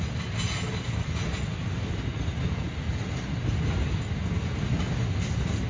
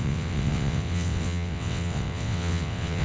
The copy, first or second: second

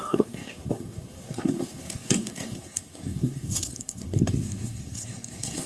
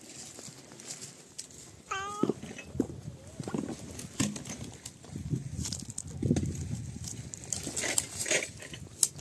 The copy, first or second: first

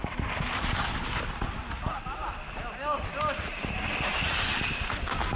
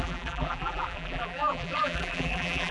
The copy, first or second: second